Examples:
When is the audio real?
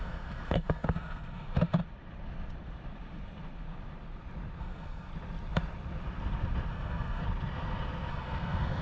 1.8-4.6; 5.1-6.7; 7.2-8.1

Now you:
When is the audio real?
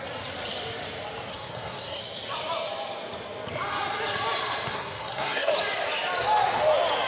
0.0-1.3; 2.0-4.7; 5.5-7.1